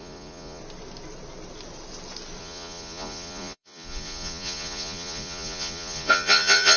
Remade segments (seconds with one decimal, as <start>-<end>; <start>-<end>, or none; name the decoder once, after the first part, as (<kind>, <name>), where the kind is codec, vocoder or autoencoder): 0.0-0.6 (vocoder, Vocos); 2.4-6.8